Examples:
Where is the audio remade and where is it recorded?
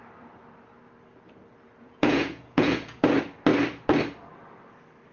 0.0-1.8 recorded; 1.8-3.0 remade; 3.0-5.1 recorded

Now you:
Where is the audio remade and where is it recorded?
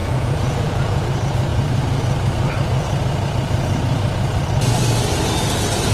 0.0-1.1 remade; 1.1-5.9 recorded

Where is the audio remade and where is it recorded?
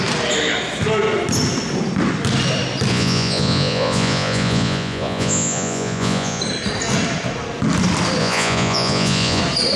0.0-2.9 recorded; 2.9-6.4 remade; 6.4-8.2 recorded; 8.2-9.4 remade; 9.4-9.8 recorded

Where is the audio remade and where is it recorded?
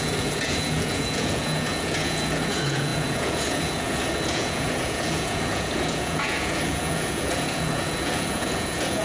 0.0-9.0 remade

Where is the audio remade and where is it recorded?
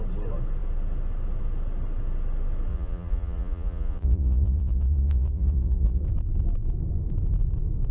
0.0-2.7 recorded; 2.7-6.0 remade; 6.0-7.9 recorded